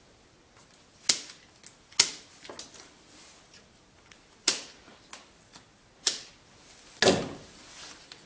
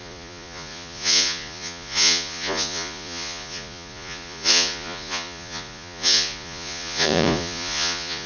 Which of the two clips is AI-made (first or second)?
second